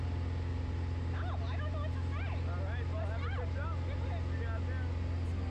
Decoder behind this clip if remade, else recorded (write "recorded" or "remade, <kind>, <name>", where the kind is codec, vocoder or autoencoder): recorded